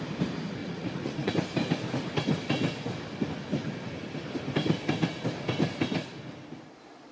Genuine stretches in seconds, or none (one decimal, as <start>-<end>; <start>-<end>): 0.0-0.6; 1.3-7.1